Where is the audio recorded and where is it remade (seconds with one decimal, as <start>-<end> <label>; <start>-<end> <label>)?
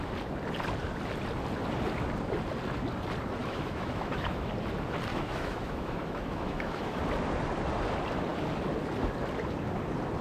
0.0-3.4 recorded; 3.4-4.5 remade; 4.5-5.1 recorded; 5.1-7.0 remade; 7.0-10.2 recorded